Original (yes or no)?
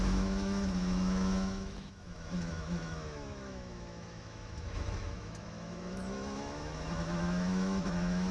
no